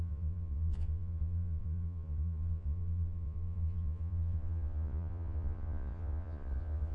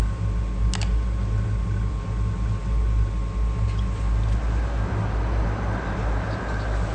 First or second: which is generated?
first